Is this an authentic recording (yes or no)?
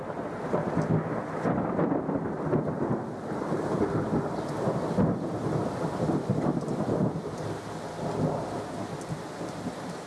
yes